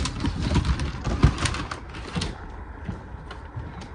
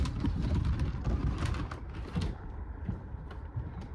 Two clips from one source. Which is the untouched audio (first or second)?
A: first